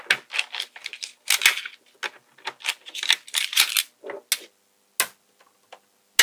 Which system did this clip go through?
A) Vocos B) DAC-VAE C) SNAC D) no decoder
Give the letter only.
D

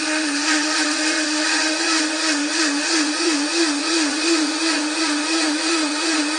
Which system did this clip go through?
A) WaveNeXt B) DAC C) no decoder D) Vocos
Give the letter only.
D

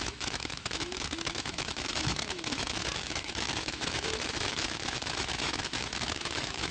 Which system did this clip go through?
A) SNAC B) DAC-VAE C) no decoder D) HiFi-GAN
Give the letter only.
B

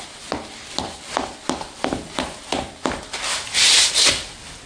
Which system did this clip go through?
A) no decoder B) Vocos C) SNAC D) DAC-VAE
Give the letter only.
A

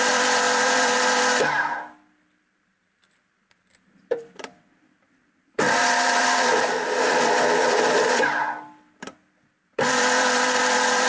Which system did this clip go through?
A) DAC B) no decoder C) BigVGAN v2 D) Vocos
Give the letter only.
C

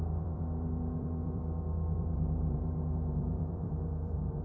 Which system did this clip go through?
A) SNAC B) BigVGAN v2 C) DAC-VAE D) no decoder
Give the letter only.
B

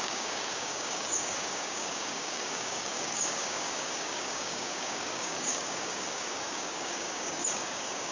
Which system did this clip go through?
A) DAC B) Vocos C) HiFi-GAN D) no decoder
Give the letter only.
A